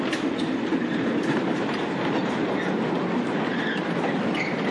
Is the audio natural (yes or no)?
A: yes